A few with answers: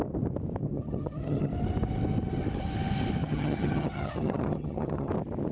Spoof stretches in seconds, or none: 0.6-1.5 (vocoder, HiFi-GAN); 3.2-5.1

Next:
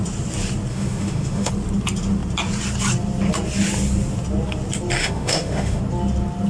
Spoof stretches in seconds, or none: 0.7-1.5 (autoencoder, DAC-VAE); 5.0-5.8

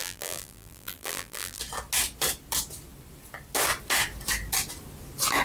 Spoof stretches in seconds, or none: 0.0-1.6 (vocoder, BigVGAN v2)

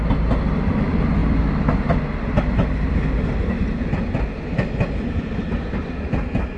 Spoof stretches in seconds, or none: none

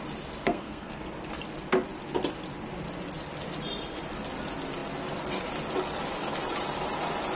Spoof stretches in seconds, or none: 0.4-1.0 (codec, SNAC)

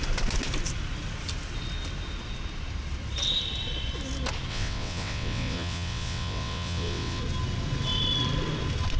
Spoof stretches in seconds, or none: 4.5-7.2 (vocoder, WaveNeXt)

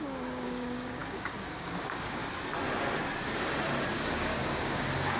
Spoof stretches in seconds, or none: 0.0-2.2 (codec, DAC); 3.9-5.2

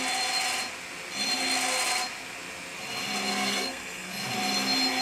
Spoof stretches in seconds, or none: 3.3-4.1 (codec, SNAC)